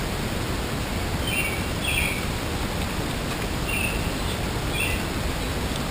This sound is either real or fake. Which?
real